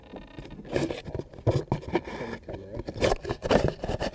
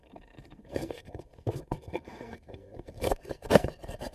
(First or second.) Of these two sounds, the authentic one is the first